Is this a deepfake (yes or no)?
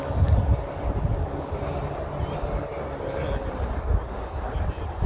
no